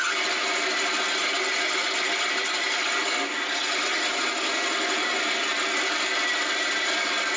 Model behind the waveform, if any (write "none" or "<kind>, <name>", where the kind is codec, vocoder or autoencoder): none